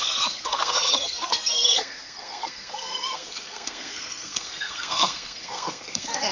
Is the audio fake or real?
fake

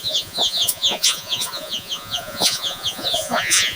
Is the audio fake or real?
fake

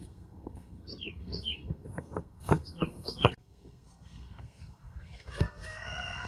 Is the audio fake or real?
fake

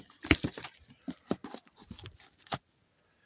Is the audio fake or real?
real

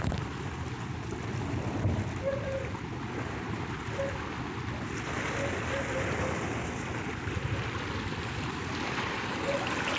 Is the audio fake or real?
real